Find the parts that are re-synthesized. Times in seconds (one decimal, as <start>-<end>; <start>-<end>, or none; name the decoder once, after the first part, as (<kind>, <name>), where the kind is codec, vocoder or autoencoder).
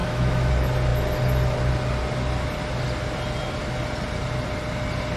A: 0.0-0.5 (autoencoder, DAC-VAE)